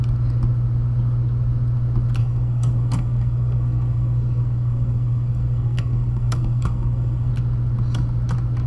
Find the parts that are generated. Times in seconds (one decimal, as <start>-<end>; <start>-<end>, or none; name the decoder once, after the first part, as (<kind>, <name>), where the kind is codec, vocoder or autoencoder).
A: 2.2-7.3 (codec, SNAC)